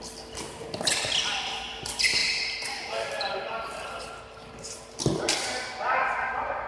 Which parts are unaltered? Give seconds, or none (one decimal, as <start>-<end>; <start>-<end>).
0.0-6.7